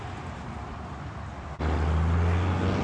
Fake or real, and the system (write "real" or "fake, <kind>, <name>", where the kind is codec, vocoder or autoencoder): real